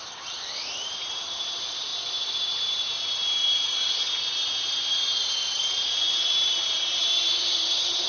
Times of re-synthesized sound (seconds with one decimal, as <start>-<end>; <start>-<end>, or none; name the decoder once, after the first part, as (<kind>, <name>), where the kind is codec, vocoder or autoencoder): 0.0-1.9 (vocoder, BigVGAN v2); 6.3-8.1